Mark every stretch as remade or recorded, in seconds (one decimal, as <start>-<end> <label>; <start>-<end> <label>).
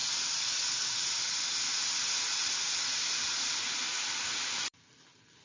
0.0-5.4 recorded